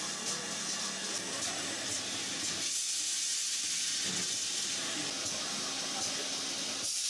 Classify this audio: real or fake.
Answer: real